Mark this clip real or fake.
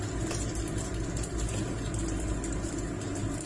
real